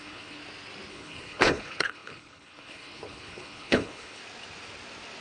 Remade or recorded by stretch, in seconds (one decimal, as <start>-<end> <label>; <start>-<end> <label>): 0.0-0.4 remade; 0.4-0.9 recorded; 0.9-4.2 remade; 4.2-5.2 recorded